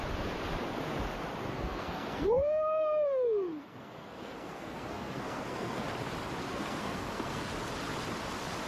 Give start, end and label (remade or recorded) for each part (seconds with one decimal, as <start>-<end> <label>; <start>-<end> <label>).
0.0-1.5 recorded; 1.5-5.8 remade; 5.8-6.4 recorded; 6.4-7.5 remade; 7.5-8.7 recorded